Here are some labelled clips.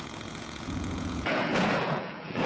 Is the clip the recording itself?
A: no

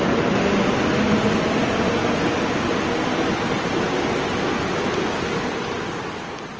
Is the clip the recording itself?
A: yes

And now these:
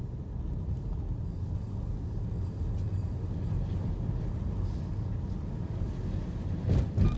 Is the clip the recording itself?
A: yes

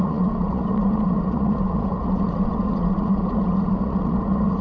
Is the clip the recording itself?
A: no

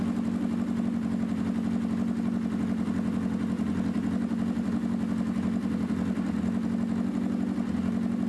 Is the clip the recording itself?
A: yes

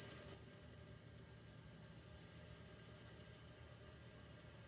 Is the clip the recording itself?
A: yes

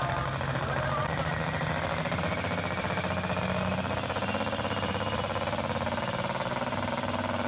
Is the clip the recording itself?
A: yes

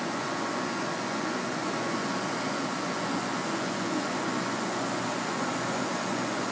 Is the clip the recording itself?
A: no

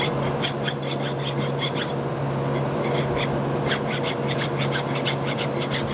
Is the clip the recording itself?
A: yes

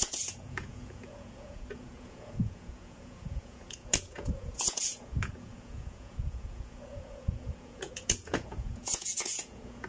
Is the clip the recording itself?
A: no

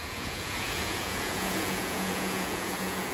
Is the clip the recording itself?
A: no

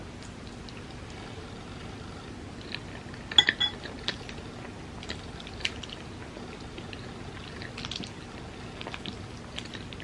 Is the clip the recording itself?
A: yes